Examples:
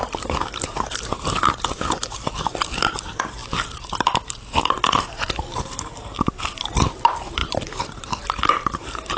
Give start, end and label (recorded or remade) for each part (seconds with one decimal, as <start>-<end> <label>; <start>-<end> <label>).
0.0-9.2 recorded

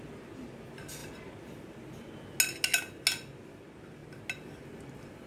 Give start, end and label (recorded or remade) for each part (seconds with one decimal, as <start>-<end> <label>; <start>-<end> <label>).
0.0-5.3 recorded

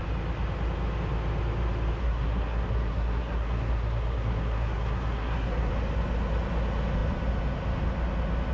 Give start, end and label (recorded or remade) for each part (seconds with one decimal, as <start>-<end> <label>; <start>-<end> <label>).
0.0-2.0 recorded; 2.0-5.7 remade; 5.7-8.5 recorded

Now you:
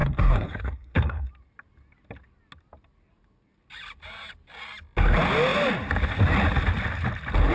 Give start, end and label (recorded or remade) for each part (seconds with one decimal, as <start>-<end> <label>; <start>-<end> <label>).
0.0-1.3 remade; 1.3-7.5 recorded

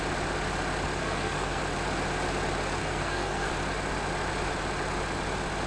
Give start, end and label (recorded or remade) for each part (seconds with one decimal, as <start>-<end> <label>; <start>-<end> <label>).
0.0-1.0 recorded; 1.0-1.6 remade; 1.6-2.8 recorded; 2.8-3.5 remade; 3.5-5.7 recorded

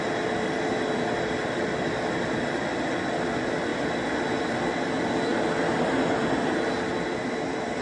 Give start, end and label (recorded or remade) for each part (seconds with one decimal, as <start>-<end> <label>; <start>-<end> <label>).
0.0-7.8 recorded